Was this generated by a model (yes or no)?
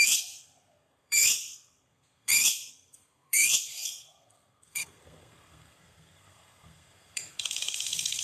yes